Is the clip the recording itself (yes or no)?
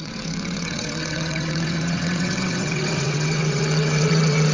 no